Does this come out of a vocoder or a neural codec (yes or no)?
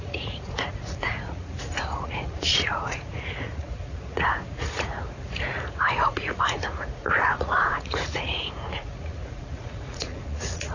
yes